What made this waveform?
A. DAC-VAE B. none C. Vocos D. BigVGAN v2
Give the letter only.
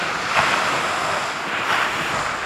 B